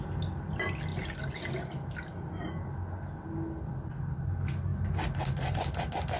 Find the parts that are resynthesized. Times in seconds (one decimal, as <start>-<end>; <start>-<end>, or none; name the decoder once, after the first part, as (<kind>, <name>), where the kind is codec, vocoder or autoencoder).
none

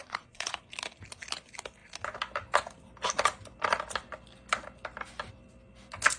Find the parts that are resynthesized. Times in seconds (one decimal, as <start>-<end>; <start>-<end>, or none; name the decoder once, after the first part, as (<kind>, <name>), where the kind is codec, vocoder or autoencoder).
0.0-0.6 (vocoder, Vocos)

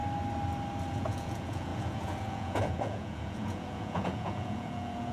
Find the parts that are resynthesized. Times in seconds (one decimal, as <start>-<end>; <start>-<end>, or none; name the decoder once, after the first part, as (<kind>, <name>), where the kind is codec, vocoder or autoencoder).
0.9-5.1 (vocoder, Vocos)

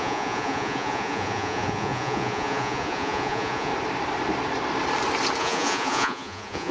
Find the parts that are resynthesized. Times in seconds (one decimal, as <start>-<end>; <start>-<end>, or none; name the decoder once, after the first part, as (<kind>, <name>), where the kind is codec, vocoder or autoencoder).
0.0-3.7 (vocoder, Vocos); 5.4-6.7